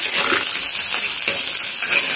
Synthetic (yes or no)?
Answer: no